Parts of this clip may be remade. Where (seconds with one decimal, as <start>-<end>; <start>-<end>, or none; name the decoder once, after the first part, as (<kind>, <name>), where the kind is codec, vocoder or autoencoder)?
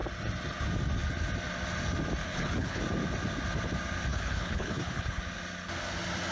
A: 2.2-2.8 (codec, HILCodec); 4.1-5.2